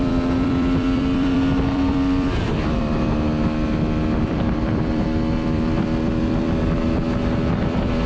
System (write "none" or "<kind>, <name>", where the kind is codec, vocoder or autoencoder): vocoder, BigVGAN v2